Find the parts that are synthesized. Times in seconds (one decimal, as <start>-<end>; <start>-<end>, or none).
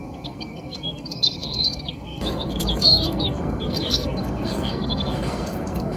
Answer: 0.0-6.0